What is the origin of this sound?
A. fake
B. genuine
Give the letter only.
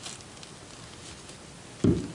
B